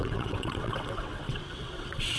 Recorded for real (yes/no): no